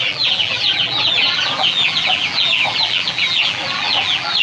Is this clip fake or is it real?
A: fake